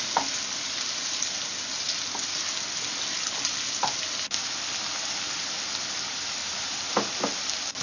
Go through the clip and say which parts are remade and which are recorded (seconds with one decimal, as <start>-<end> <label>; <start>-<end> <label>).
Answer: 0.0-2.3 remade; 2.3-5.8 recorded; 5.8-7.8 remade

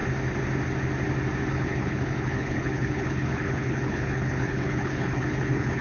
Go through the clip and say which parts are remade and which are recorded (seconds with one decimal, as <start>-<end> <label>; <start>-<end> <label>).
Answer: 0.0-1.5 recorded; 1.5-5.8 remade

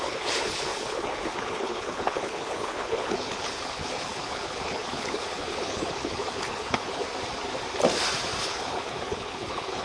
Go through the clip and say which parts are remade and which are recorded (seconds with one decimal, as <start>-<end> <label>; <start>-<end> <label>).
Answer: 0.0-7.0 remade; 7.0-8.4 recorded; 8.4-9.8 remade